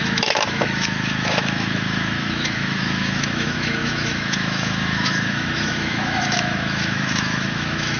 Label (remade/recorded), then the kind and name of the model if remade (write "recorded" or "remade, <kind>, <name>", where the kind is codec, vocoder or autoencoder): remade, autoencoder, DAC-VAE